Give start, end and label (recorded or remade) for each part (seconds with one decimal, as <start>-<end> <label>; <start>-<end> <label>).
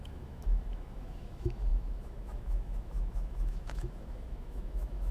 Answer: 0.0-5.1 remade